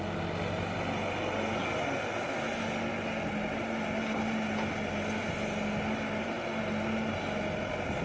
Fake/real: real